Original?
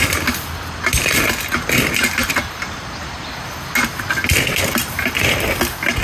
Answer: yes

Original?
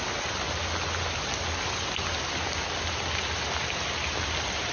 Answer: yes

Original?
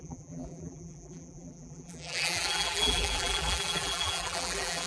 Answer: no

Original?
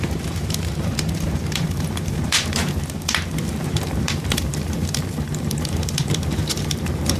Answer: no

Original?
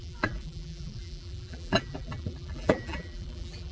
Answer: no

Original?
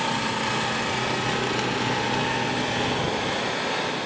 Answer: yes